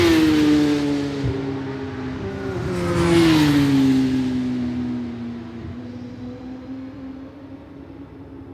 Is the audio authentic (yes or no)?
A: yes